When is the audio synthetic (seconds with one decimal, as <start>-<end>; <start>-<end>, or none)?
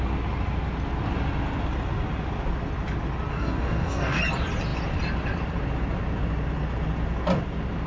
3.3-4.2